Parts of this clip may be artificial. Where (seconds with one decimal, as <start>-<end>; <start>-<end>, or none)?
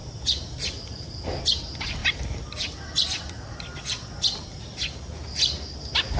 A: none